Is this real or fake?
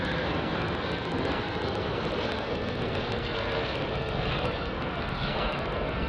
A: fake